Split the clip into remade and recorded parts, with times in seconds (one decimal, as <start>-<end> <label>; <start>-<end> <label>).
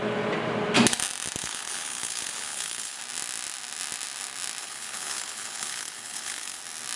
0.0-1.4 recorded; 1.4-3.0 remade; 3.0-4.6 recorded; 4.6-6.6 remade; 6.6-7.0 recorded